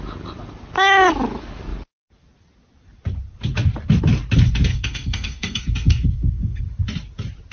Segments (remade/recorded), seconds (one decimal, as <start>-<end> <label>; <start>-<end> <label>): 0.0-4.7 recorded; 4.7-6.6 remade; 6.6-7.5 recorded